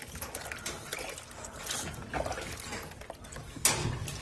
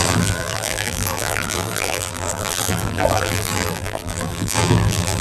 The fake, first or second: second